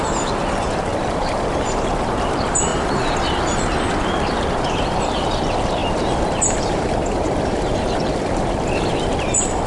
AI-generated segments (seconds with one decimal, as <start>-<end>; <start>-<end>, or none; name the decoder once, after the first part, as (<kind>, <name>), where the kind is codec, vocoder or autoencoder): 0.0-2.7 (vocoder, BigVGAN v2); 3.2-5.8; 6.3-9.7